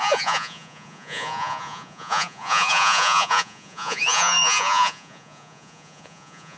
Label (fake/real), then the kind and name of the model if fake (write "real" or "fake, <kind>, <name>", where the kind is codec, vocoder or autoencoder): fake, vocoder, Vocos